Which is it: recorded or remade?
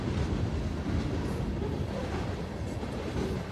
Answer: recorded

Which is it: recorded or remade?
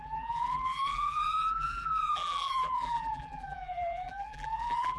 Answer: remade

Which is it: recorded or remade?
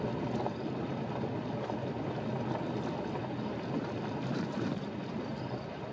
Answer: recorded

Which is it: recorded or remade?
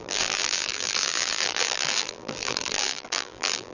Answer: remade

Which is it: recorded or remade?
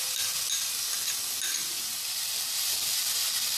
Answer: recorded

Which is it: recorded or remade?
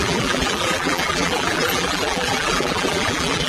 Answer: remade